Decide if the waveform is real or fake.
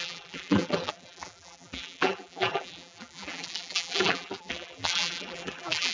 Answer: fake